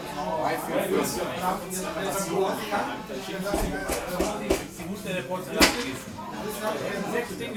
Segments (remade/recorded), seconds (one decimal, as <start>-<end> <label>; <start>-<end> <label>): 0.0-3.8 recorded; 3.8-4.8 remade; 4.8-7.6 recorded